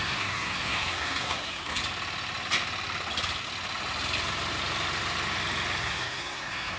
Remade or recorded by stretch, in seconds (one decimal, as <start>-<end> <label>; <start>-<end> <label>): 0.0-1.8 remade; 1.8-5.8 recorded; 5.8-6.8 remade